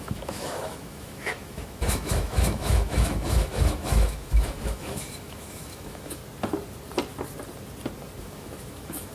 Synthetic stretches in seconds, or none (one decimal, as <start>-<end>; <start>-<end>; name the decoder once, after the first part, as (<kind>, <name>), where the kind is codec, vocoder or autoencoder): 0.0-6.2 (autoencoder, DAC-VAE); 8.2-9.1

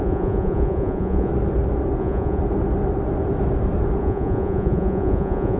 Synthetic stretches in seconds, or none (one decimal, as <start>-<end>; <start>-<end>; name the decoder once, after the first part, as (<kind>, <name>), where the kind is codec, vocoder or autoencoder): 0.0-1.3 (vocoder, Vocos); 2.0-2.4; 4.0-5.6

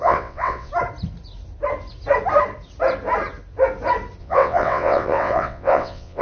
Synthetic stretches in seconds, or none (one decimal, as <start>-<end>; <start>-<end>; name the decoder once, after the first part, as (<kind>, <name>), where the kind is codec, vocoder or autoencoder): 0.0-0.7 (vocoder, WaveNeXt); 4.2-6.2